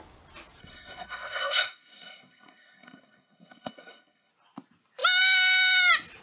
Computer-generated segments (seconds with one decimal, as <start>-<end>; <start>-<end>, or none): 0.6-4.3